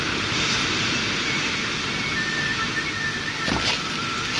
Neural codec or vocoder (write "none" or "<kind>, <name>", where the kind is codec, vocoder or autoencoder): none